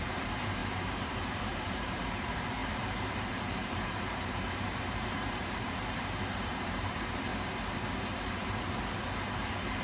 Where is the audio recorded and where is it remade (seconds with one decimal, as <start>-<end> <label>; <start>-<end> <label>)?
0.0-7.3 remade; 7.3-9.8 recorded